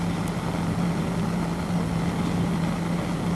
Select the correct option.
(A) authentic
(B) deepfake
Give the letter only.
A